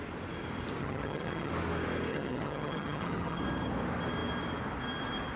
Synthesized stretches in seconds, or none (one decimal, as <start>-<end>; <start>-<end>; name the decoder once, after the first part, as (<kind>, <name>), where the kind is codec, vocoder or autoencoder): 0.8-1.5 (vocoder, HiFi-GAN); 2.1-3.4